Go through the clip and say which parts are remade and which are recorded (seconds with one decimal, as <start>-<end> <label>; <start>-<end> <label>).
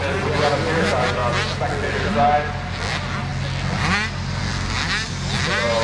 0.0-5.8 recorded